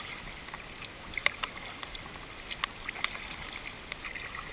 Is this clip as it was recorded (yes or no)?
yes